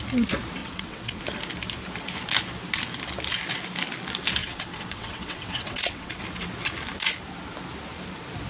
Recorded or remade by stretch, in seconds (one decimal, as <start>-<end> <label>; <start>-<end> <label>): 0.0-0.6 recorded; 0.6-1.2 remade; 1.2-4.4 recorded; 4.4-6.2 remade; 6.2-8.5 recorded

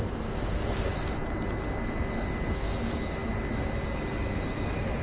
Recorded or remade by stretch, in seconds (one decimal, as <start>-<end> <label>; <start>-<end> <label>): 0.0-5.0 recorded

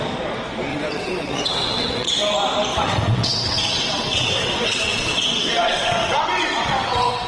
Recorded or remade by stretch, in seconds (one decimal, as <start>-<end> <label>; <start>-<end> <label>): 0.0-0.7 recorded; 0.7-2.2 remade; 2.2-2.7 recorded; 2.7-7.3 remade

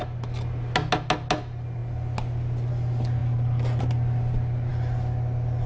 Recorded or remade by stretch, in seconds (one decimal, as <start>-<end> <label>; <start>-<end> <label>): 0.0-5.7 recorded